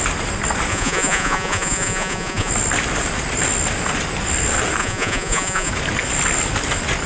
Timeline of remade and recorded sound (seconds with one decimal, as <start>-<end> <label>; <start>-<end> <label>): 0.0-0.7 recorded; 0.7-2.5 remade; 2.5-4.8 recorded; 4.8-5.7 remade; 5.7-7.1 recorded